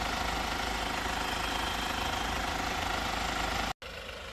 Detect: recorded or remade recorded